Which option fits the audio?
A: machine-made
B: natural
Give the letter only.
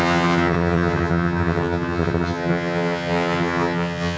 A